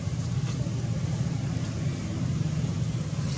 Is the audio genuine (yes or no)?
yes